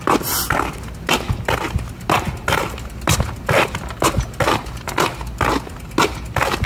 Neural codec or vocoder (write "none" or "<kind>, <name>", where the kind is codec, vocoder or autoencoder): none